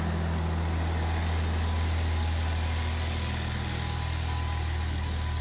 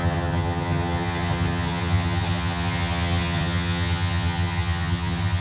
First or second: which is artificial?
second